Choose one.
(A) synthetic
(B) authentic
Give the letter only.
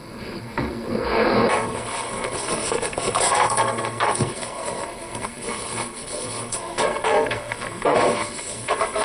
A